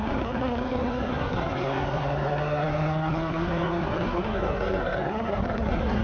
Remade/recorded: remade